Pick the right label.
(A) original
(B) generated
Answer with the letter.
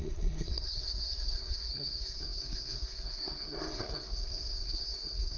B